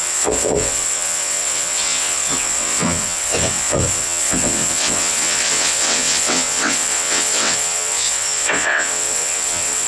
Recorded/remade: remade